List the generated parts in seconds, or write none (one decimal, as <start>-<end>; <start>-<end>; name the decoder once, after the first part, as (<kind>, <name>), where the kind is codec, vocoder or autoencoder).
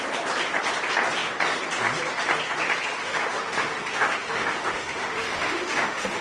3.0-6.2 (autoencoder, DAC-VAE)